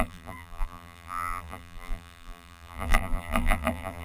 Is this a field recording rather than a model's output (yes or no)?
no